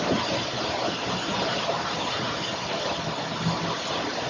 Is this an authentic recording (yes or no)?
yes